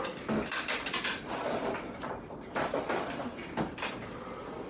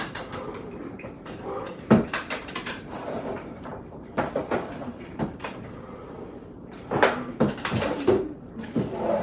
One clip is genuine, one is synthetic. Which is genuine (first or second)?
first